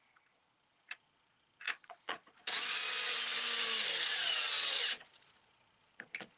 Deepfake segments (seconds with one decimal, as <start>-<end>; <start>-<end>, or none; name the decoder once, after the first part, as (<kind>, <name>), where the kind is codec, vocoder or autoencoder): 0.0-2.8 (vocoder, Vocos); 4.0-6.4